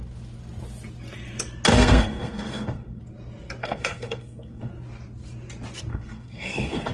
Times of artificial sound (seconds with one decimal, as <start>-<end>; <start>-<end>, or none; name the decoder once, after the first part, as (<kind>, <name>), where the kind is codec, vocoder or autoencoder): 1.7-3.0 (codec, SNAC); 3.6-4.7; 5.9-6.9